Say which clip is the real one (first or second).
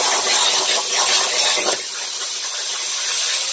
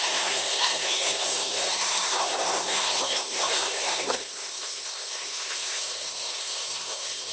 first